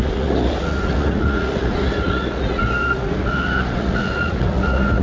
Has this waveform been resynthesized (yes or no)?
yes